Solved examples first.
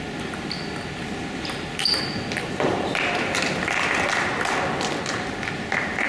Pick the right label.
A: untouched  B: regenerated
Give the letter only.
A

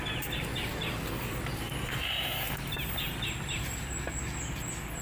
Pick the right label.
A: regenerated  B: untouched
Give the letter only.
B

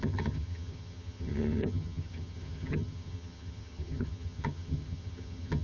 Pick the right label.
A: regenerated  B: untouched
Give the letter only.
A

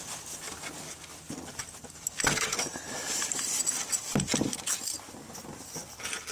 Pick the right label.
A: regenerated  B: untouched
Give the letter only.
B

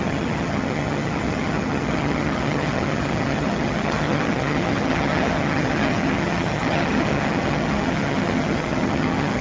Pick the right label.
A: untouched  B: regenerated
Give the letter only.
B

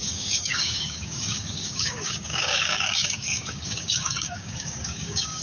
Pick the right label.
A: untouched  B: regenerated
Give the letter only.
B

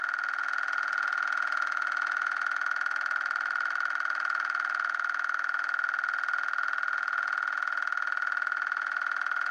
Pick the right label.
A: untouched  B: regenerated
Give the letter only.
A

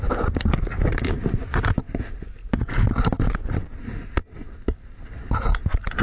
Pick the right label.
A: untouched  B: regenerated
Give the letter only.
A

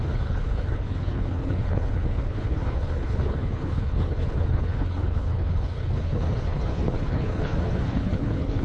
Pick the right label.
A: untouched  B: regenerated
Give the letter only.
B